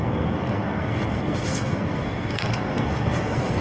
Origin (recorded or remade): remade